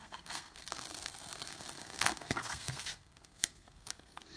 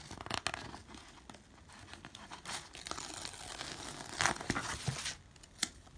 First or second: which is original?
second